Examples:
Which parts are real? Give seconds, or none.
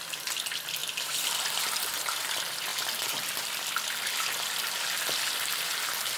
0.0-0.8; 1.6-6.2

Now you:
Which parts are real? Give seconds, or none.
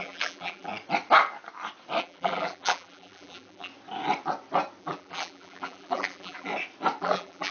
0.7-2.0; 3.7-4.8; 6.5-7.0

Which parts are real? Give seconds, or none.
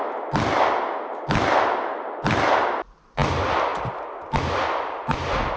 0.0-5.6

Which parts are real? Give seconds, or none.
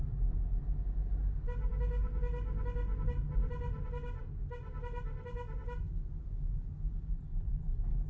0.0-8.1